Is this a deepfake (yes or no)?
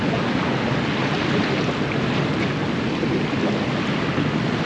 no